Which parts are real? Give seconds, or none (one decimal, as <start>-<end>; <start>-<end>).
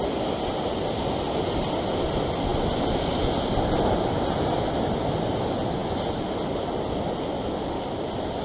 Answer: 0.0-8.4